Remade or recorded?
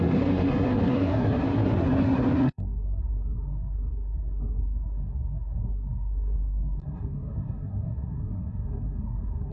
remade